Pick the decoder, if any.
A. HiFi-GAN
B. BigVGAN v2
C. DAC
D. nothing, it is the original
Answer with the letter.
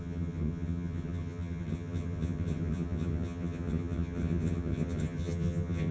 A